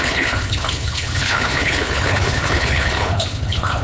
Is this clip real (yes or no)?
no